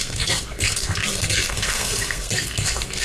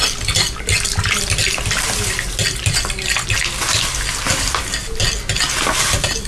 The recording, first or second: second